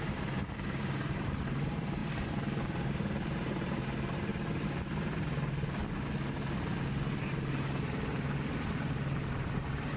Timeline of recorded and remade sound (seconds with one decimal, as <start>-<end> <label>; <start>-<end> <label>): 0.0-2.0 remade; 2.0-2.6 recorded; 2.6-4.3 remade; 4.3-7.8 recorded; 7.8-10.0 remade